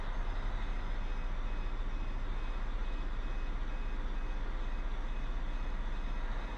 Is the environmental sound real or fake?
real